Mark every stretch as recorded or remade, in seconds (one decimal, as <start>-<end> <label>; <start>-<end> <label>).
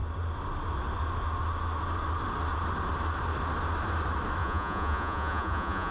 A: 0.0-4.4 recorded; 4.4-5.9 remade